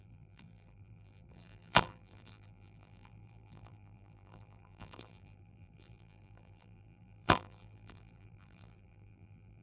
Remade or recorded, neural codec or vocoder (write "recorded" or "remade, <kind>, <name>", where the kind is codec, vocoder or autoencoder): remade, vocoder, BigVGAN v2